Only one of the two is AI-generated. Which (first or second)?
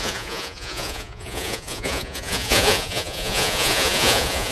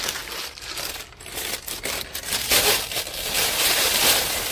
first